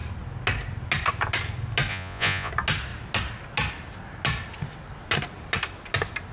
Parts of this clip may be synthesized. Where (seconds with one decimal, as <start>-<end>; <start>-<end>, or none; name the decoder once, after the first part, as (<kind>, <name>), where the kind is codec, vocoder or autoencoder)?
1.9-2.5 (vocoder, Vocos)